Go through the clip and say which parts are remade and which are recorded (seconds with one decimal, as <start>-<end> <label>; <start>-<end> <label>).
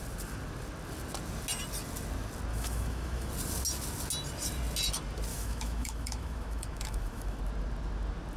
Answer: 0.0-2.5 recorded; 2.5-3.3 remade; 3.3-5.3 recorded; 5.3-7.4 remade; 7.4-8.4 recorded